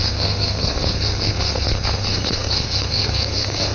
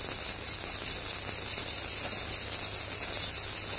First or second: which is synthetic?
first